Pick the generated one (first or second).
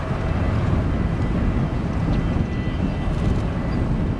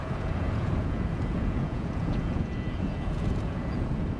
second